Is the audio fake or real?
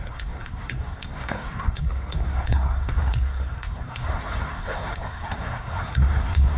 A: fake